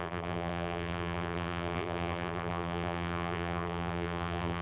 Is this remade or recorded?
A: remade